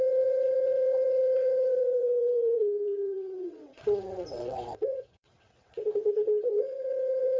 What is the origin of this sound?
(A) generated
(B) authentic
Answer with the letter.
A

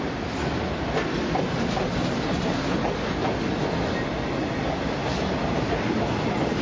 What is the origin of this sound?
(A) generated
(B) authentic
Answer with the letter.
B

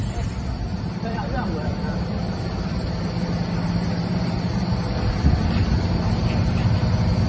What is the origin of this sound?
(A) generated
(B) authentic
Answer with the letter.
B